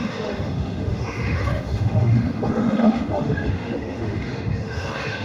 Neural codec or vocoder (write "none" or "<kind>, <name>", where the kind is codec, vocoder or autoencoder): autoencoder, DAC-VAE